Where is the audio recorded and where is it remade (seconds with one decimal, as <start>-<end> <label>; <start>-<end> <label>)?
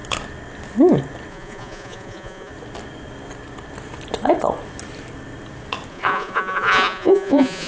0.0-1.3 recorded; 1.3-2.5 remade; 2.5-5.9 recorded; 5.9-7.7 remade